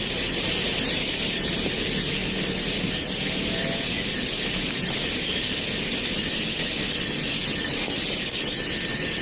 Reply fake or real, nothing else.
real